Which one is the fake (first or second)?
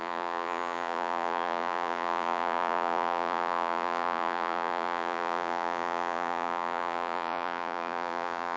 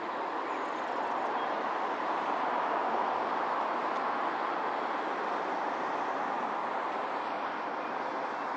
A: first